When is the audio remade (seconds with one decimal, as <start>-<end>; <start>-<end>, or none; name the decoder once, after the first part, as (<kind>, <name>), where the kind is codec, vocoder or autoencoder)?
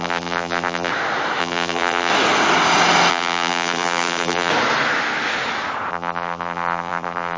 0.0-0.9 (vocoder, BigVGAN v2); 1.4-2.1; 3.1-4.5; 5.9-7.4